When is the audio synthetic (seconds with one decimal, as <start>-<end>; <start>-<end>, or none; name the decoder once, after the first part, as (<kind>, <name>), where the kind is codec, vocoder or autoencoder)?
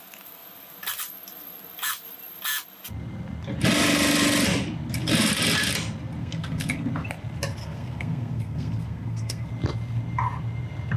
6.2-6.9 (codec, SNAC); 7.6-9.5